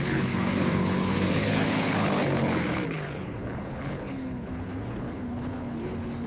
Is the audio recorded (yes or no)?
no